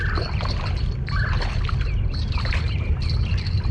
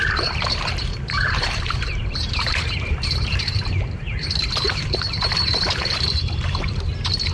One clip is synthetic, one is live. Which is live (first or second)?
first